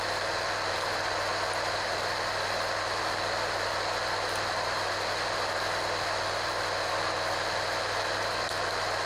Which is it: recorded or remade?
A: recorded